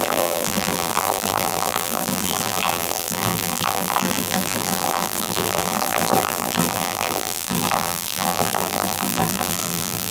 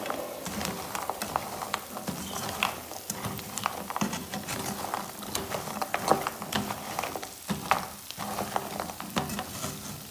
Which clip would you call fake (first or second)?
first